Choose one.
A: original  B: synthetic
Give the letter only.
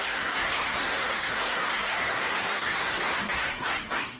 B